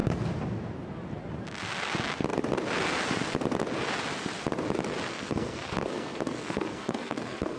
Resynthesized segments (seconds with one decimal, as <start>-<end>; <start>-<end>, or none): 5.1-7.6